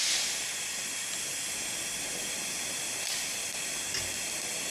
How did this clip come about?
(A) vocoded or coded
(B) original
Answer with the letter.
B